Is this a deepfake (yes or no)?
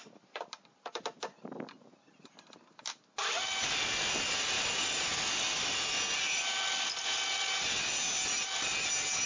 no